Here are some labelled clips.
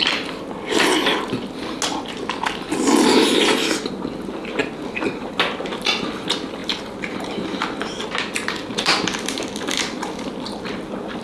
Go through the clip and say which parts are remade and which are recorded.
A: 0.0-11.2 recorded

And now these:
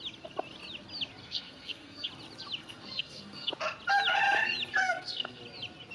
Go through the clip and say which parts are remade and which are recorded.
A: 0.0-1.2 recorded; 1.2-2.1 remade; 2.1-2.6 recorded; 2.6-3.5 remade; 3.5-4.8 recorded; 4.8-5.4 remade; 5.4-5.9 recorded

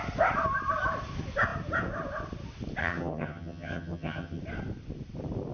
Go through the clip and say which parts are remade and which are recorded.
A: 0.0-2.8 recorded; 2.8-4.4 remade; 4.4-5.5 recorded

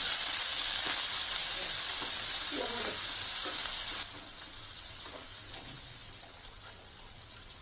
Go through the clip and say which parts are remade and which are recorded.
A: 0.0-0.5 remade; 0.5-4.1 recorded; 4.1-7.6 remade

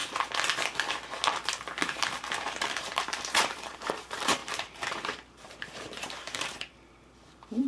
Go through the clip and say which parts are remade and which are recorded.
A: 0.0-1.8 recorded; 1.8-7.7 remade

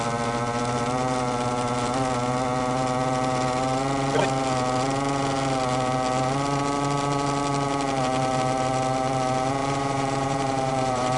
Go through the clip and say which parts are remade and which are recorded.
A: 0.0-9.6 recorded; 9.6-11.2 remade

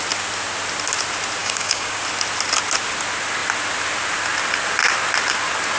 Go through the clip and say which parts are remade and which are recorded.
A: 0.0-1.4 recorded; 1.4-2.0 remade; 2.0-5.8 recorded

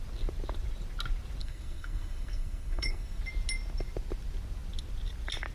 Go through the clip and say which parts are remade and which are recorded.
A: 0.0-1.4 recorded; 1.4-3.2 remade; 3.2-5.5 recorded